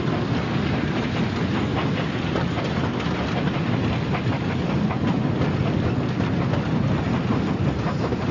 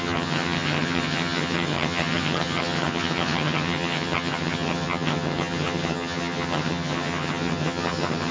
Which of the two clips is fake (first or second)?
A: second